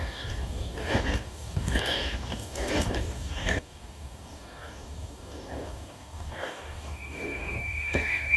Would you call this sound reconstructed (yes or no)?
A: yes